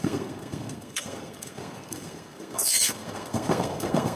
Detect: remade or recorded remade